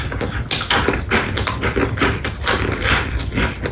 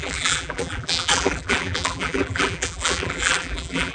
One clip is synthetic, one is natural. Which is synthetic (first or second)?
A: second